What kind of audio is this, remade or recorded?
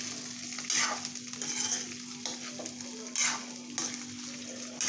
recorded